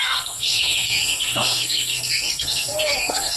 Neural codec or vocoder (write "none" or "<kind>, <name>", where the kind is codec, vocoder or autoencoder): codec, SNAC